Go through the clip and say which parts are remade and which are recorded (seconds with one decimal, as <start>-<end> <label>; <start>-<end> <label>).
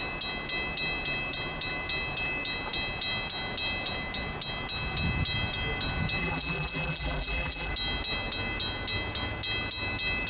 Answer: 0.0-6.2 recorded; 6.2-7.7 remade; 7.7-10.3 recorded